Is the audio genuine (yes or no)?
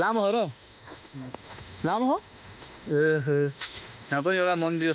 no